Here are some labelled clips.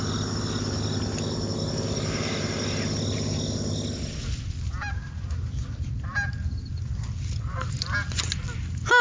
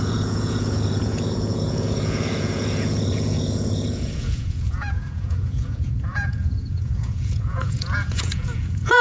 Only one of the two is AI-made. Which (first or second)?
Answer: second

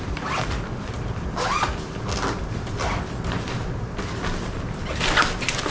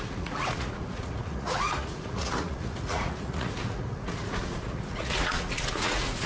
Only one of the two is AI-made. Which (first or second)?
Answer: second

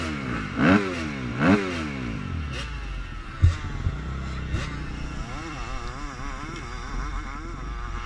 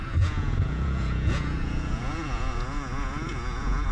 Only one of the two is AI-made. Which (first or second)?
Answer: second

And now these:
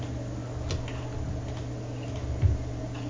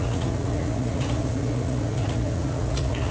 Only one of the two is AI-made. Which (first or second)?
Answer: second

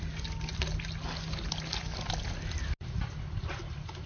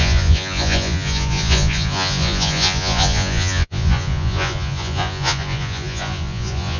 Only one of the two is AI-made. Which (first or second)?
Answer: second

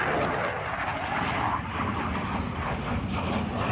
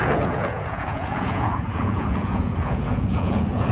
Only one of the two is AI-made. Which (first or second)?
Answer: second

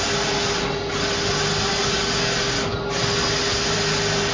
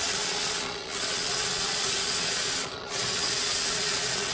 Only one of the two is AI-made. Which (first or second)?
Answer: second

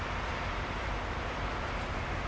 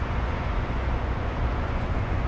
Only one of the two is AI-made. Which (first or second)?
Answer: second